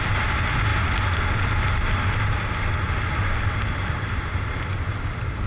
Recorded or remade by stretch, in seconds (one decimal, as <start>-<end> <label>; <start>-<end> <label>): 0.0-5.5 recorded